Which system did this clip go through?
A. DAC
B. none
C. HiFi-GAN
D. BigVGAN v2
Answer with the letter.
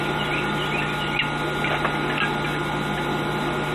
B